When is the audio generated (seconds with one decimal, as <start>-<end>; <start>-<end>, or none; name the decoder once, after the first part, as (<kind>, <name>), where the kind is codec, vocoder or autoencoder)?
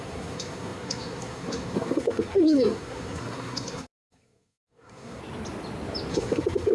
0.0-5.2 (codec, SNAC); 6.1-6.7